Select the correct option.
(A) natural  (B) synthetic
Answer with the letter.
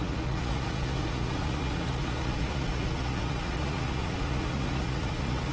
B